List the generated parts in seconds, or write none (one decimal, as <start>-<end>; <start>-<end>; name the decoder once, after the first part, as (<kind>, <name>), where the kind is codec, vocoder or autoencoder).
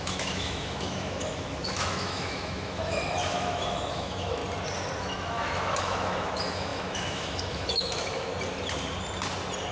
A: 0.0-4.4 (autoencoder, DAC-VAE); 5.0-8.3